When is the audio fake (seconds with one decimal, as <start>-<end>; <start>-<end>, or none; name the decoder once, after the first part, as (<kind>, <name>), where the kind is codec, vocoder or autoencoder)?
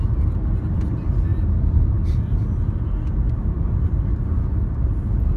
none